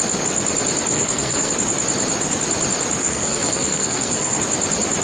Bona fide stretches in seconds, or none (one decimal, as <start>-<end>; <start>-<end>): 0.0-0.9; 1.5-3.0; 4.4-5.0